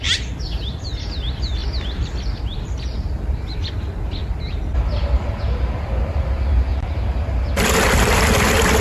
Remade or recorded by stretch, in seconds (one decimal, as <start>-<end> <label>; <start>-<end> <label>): 0.0-1.6 recorded; 1.6-3.7 remade; 3.7-6.7 recorded; 6.7-7.4 remade; 7.4-8.8 recorded